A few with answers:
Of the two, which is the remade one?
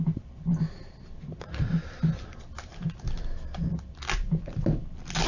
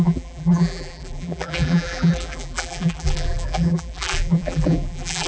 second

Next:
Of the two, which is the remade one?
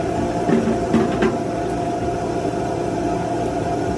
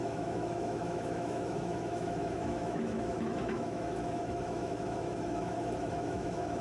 second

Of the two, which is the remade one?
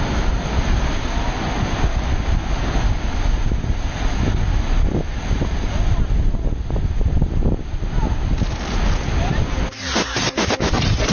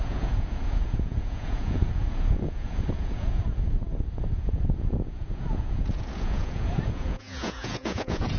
second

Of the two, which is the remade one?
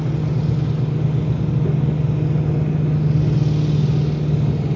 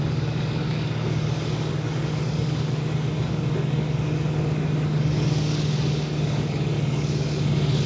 second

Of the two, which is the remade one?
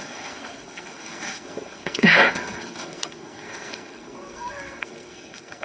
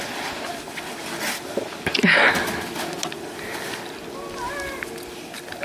first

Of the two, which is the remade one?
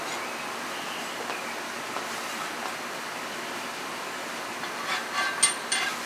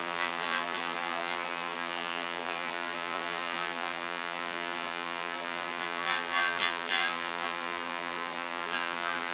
second